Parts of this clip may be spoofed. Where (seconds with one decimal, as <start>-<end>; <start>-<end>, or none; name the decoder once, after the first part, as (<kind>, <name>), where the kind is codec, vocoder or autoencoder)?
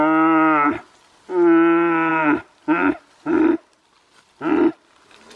none